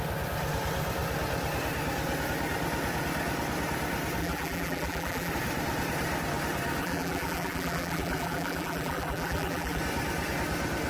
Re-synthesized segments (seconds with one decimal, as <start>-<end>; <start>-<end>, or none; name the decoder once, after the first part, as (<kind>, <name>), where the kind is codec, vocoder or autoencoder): 4.2-5.3 (vocoder, BigVGAN v2); 6.8-9.8

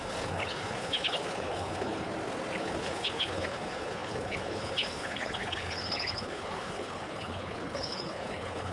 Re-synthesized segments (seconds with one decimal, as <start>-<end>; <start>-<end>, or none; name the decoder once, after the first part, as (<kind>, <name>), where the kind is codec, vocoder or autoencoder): 0.0-2.1 (codec, HILCodec); 2.6-8.7

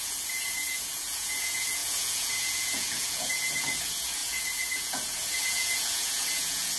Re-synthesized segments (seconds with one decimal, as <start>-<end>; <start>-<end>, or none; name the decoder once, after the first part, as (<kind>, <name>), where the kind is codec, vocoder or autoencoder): 0.0-6.8 (vocoder, Vocos)

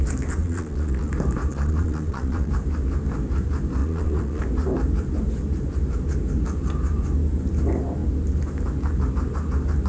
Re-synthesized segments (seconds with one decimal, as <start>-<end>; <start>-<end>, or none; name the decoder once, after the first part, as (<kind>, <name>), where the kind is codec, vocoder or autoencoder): 0.4-1.1 (vocoder, Vocos); 1.5-2.5; 3.8-4.4

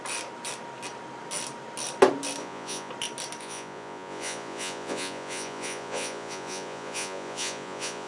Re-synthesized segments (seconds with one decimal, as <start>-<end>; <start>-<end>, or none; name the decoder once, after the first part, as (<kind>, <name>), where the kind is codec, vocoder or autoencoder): 2.4-2.9 (vocoder, Vocos); 3.4-8.1

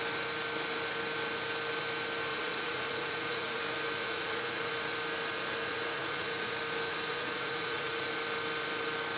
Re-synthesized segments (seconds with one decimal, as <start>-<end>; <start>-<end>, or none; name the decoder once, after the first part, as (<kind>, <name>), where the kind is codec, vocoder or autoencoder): 2.3-3.6 (vocoder, Vocos); 4.0-4.7; 5.7-6.5; 7.1-8.1

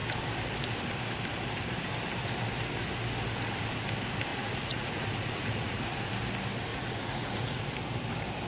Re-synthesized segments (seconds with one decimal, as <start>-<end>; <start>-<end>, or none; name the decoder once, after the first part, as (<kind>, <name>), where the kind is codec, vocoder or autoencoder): 4.3-6.0 (vocoder, Vocos); 6.7-7.6

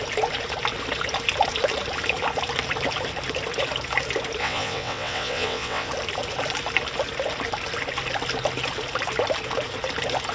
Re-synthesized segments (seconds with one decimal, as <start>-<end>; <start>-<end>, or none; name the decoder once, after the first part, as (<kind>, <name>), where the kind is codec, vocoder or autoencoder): 4.4-5.9 (vocoder, WaveNeXt)